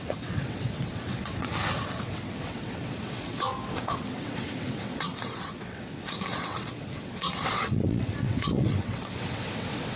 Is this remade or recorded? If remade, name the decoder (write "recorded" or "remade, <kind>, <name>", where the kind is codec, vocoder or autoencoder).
remade, vocoder, WaveNeXt